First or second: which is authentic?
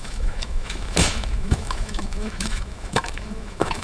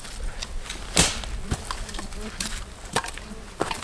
second